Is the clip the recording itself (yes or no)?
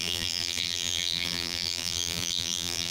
no